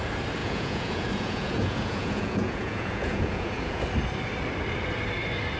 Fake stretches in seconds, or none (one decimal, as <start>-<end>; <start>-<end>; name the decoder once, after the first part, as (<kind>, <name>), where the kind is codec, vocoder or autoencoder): 0.4-3.8 (vocoder, Vocos)